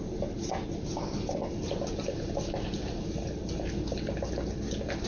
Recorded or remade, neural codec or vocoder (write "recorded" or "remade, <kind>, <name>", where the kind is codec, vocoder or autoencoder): recorded